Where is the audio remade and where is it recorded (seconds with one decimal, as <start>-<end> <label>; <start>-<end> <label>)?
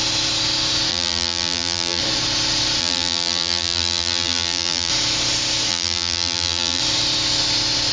0.0-0.9 recorded; 0.9-2.0 remade; 2.0-2.8 recorded; 2.8-4.9 remade; 4.9-5.7 recorded; 5.7-6.8 remade; 6.8-7.9 recorded